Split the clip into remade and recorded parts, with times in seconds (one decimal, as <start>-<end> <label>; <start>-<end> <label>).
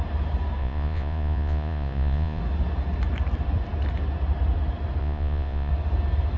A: 0.0-0.6 recorded; 0.6-2.4 remade; 2.4-5.0 recorded; 5.0-5.7 remade; 5.7-6.4 recorded